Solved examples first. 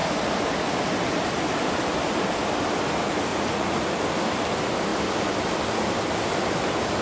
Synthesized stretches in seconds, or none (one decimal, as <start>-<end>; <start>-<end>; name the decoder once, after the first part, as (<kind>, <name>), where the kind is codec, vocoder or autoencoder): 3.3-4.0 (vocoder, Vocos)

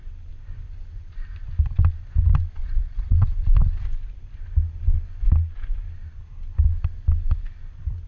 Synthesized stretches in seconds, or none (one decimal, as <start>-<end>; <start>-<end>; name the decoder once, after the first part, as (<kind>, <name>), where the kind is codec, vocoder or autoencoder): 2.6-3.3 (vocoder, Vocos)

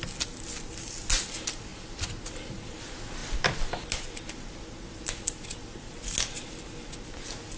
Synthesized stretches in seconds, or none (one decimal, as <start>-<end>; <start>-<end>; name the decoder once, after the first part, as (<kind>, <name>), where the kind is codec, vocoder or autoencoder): none

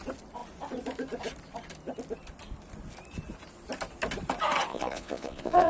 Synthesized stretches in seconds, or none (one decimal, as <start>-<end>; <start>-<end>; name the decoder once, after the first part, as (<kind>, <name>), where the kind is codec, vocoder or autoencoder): 4.7-5.7 (vocoder, Vocos)

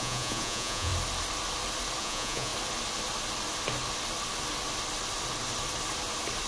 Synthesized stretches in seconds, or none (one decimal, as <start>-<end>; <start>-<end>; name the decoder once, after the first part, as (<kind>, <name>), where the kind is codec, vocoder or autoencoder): 0.0-0.9 (vocoder, Vocos); 2.0-2.5